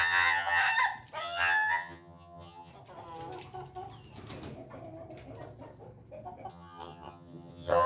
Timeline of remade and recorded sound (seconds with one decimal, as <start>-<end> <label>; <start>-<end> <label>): 0.0-0.6 remade; 0.6-1.2 recorded; 1.2-2.7 remade; 2.7-6.5 recorded; 6.5-7.9 remade